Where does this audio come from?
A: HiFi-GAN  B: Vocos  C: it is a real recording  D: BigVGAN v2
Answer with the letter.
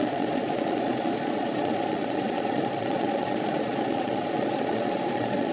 B